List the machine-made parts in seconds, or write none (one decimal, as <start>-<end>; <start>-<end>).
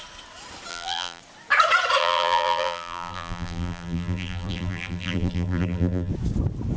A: 0.7-1.2; 2.0-6.1